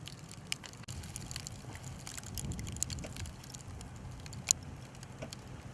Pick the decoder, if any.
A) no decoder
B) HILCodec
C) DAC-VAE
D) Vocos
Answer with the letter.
A